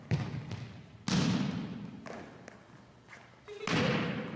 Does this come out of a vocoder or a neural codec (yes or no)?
no